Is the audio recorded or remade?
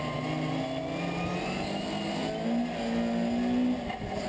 recorded